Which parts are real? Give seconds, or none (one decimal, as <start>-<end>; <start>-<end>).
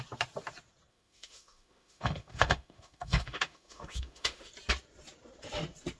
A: 0.0-0.9; 4.5-6.0